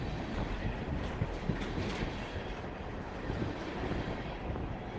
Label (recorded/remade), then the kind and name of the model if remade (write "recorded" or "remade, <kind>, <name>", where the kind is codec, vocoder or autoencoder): remade, vocoder, BigVGAN v2